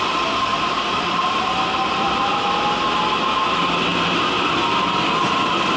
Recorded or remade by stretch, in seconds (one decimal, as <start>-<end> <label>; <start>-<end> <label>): 0.0-0.5 recorded; 0.5-2.5 remade; 2.5-3.9 recorded; 3.9-4.5 remade; 4.5-5.8 recorded